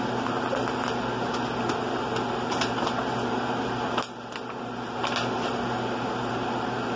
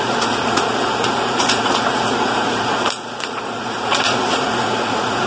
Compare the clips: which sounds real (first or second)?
first